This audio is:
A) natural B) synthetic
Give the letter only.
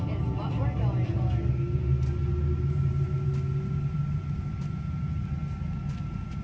A